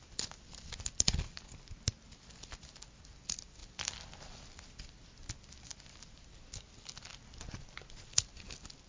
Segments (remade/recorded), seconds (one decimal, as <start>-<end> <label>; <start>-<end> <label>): 0.0-8.9 recorded